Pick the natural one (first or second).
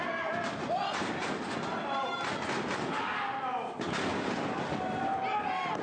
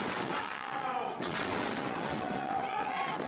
first